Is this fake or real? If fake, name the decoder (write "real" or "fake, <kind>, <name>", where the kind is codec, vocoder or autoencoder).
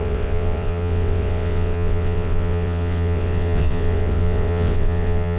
fake, vocoder, WaveNeXt